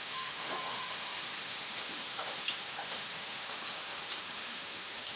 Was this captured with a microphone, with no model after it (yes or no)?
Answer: no